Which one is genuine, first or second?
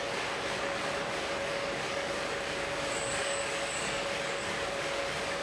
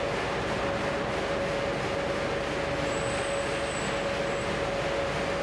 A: second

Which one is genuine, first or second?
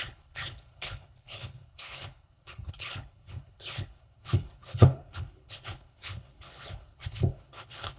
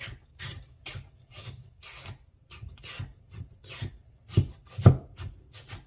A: second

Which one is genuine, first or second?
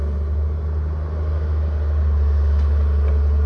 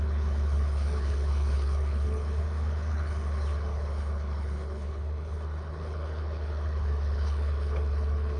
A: first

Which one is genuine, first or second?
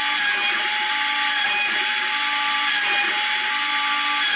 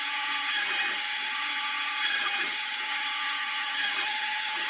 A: first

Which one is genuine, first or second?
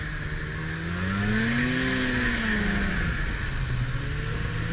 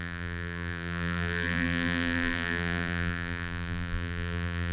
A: first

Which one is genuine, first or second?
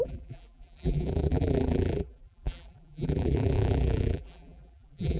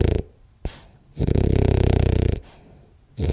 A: second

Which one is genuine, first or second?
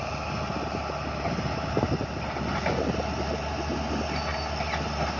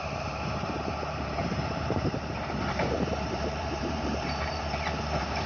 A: first